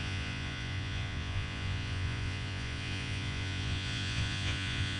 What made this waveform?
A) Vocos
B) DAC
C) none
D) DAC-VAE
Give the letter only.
A